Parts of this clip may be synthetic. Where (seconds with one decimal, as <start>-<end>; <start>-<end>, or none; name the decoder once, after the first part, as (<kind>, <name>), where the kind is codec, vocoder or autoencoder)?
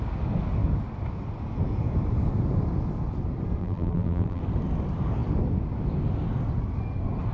3.6-4.4 (vocoder, BigVGAN v2)